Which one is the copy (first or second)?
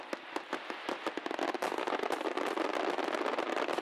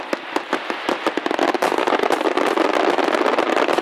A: second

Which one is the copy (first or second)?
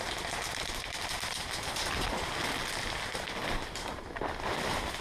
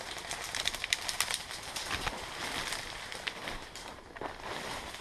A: second